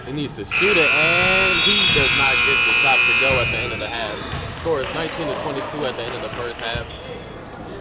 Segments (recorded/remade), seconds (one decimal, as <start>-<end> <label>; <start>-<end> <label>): 0.0-7.8 recorded